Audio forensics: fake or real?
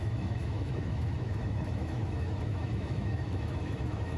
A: fake